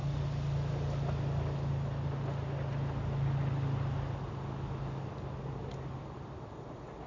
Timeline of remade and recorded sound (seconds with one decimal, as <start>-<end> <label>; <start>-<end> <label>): 0.0-7.1 recorded